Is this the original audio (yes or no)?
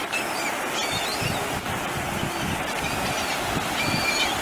yes